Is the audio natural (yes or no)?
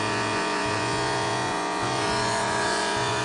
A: no